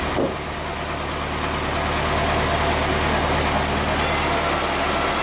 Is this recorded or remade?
recorded